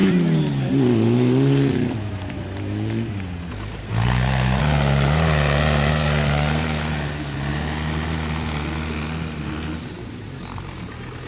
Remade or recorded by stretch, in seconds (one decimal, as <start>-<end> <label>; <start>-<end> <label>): 0.0-3.8 recorded; 3.8-4.6 remade; 4.6-5.9 recorded; 5.9-6.9 remade; 6.9-11.3 recorded